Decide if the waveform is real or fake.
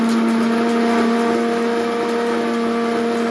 real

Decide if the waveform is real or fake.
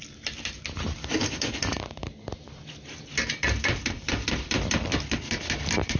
fake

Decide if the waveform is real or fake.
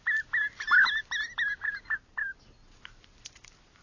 real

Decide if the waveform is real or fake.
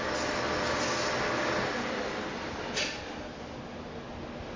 real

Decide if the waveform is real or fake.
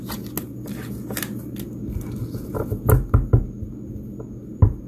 real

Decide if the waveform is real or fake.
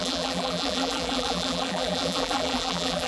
fake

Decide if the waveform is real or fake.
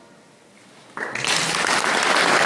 real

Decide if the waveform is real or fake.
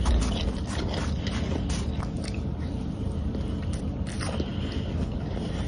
real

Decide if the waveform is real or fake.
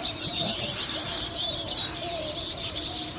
fake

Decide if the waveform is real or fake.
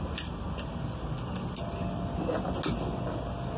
real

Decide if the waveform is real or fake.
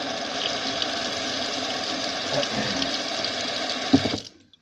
real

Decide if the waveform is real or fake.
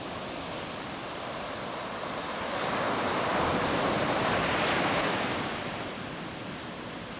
fake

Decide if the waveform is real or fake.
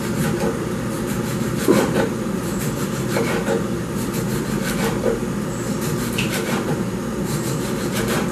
fake